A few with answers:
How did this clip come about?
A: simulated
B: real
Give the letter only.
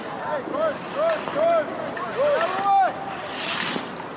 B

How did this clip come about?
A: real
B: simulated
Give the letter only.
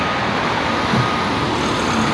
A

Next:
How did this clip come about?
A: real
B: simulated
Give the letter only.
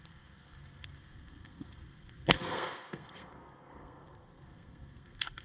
B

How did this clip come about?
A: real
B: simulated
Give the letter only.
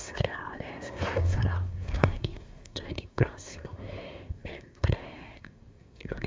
B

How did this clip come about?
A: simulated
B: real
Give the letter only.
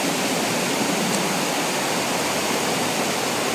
B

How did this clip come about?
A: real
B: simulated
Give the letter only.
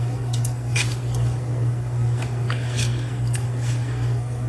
B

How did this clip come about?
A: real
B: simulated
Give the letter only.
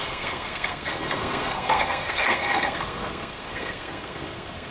B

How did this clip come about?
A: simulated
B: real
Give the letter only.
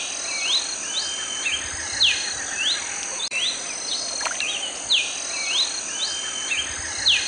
B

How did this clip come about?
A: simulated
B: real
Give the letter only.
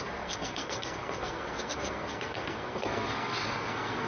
A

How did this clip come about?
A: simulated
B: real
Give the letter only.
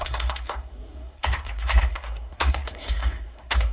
A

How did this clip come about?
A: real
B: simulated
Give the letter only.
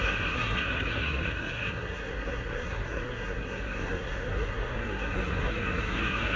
B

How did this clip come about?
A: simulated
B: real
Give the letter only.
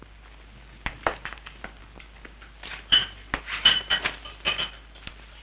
B